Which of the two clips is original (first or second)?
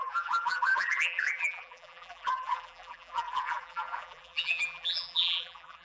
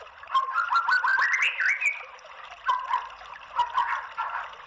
second